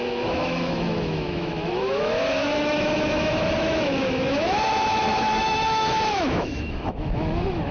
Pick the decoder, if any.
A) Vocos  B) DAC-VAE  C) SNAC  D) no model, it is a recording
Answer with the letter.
B